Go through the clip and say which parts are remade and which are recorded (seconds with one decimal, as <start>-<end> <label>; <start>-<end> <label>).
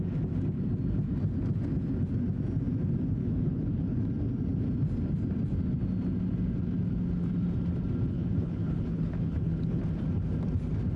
0.0-3.2 recorded; 3.2-4.0 remade; 4.0-8.1 recorded; 8.1-9.8 remade; 9.8-11.0 recorded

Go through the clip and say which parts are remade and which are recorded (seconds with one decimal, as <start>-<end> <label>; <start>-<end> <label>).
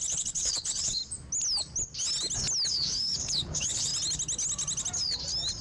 0.0-1.0 remade; 1.0-2.7 recorded; 2.7-3.9 remade; 3.9-5.6 recorded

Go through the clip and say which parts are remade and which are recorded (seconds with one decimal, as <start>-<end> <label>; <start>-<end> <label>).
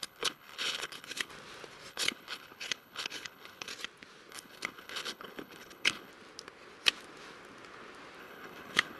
0.0-1.3 remade; 1.3-1.9 recorded; 1.9-3.7 remade; 3.7-4.3 recorded; 4.3-6.1 remade; 6.1-8.2 recorded; 8.2-9.0 remade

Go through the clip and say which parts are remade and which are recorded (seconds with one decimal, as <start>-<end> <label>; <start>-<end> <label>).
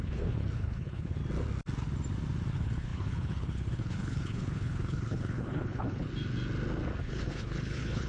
0.0-1.2 remade; 1.2-2.5 recorded; 2.5-6.1 remade; 6.1-7.0 recorded; 7.0-8.1 remade